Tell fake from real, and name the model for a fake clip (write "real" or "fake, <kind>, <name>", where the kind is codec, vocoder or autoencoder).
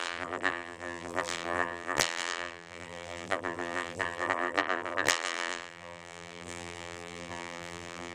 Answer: fake, vocoder, BigVGAN v2